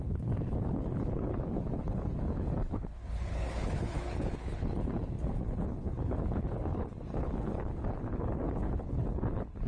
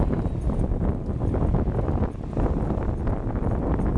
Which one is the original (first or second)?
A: second